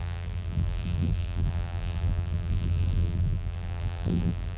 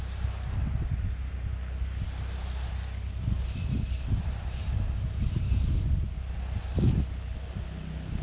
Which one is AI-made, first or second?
first